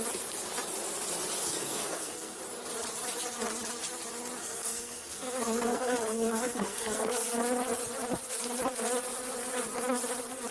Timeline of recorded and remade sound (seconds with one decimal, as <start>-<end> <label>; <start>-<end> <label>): 0.0-1.4 recorded; 1.4-2.4 remade; 2.4-4.4 recorded; 4.4-7.4 remade; 7.4-10.5 recorded